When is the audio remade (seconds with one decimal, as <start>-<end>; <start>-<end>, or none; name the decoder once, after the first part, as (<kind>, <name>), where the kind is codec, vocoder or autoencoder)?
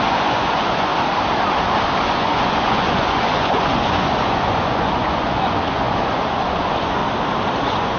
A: 0.0-0.9 (vocoder, Vocos); 2.0-7.0; 7.6-8.0